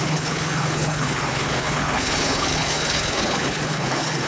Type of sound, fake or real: fake